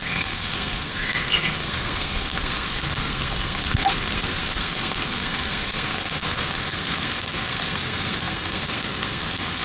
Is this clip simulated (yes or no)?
yes